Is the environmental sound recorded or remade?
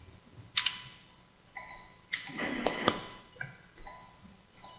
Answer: recorded